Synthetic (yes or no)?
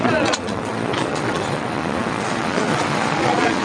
yes